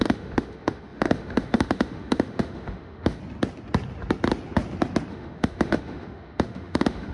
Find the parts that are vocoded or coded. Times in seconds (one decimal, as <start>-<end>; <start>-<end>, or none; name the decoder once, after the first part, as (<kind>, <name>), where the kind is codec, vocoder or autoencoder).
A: 0.0-3.2 (autoencoder, DAC-VAE); 5.1-7.1